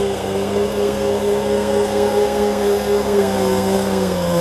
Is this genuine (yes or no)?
no